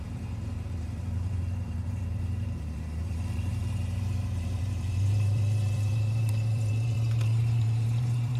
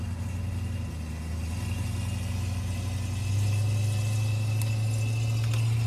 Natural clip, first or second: second